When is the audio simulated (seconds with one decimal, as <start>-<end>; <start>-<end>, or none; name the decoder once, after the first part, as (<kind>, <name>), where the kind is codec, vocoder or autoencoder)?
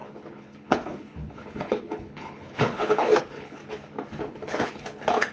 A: 0.0-3.6 (codec, HILCodec); 4.2-5.3